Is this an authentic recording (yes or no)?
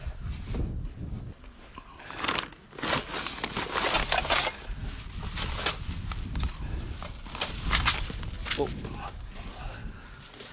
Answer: yes